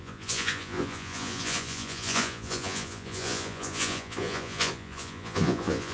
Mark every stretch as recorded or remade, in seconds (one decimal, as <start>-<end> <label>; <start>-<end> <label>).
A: 0.0-5.9 remade